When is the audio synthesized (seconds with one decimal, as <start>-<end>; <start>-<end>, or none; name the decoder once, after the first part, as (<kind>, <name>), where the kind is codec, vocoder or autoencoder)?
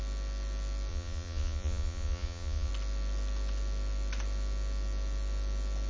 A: 0.9-2.7 (vocoder, Vocos)